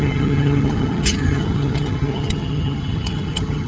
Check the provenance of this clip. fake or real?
fake